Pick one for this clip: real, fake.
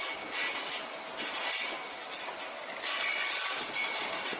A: real